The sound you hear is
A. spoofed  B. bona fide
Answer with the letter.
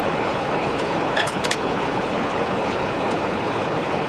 A